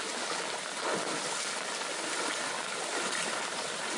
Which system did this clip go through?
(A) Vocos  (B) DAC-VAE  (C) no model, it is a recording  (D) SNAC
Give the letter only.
C